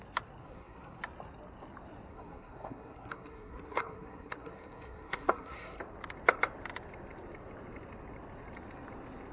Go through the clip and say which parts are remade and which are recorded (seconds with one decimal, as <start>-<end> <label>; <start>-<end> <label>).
0.0-0.4 recorded; 0.4-1.0 remade; 1.0-2.1 recorded; 2.1-5.8 remade; 5.8-9.3 recorded